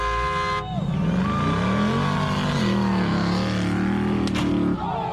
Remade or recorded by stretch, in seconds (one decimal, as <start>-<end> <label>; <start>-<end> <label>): 0.0-5.1 recorded